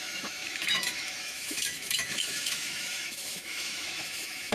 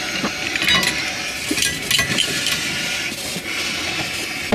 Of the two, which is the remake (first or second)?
first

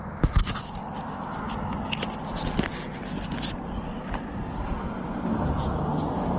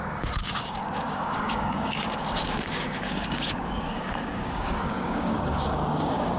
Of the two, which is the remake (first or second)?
second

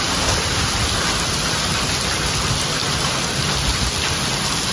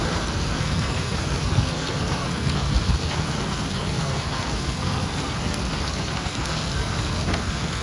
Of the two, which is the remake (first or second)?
second